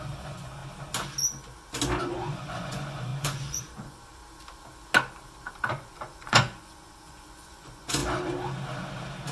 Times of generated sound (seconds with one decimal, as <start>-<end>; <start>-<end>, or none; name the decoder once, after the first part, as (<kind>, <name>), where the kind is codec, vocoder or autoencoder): 0.0-0.6 (vocoder, Vocos); 2.0-4.2; 5.7-8.0